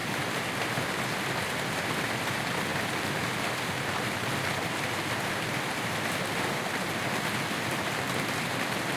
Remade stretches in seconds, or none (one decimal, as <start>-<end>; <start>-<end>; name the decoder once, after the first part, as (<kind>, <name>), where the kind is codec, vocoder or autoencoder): none